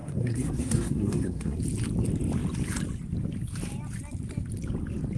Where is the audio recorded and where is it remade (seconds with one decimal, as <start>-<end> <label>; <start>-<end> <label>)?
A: 0.0-1.6 remade; 1.6-5.2 recorded